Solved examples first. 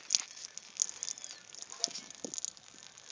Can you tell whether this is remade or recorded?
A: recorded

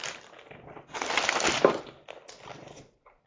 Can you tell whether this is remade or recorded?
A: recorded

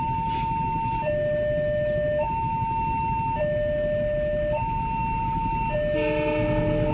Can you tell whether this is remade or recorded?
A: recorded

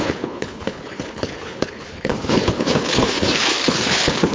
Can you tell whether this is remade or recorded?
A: remade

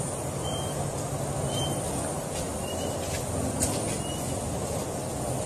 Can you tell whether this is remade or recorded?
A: recorded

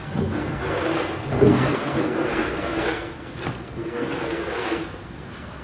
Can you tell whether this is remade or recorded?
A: remade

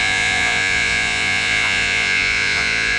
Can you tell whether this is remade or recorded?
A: remade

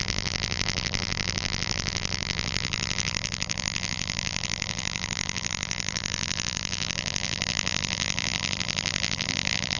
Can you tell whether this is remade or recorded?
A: remade